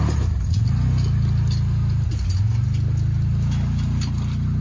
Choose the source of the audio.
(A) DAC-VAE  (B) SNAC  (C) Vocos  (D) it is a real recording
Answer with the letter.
D